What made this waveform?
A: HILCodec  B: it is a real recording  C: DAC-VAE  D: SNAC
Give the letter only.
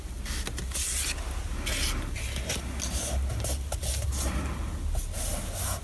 B